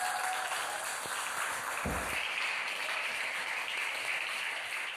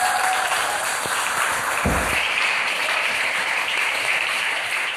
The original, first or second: first